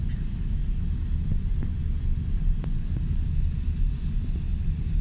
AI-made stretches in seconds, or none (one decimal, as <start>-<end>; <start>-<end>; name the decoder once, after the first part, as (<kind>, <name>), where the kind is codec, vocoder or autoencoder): none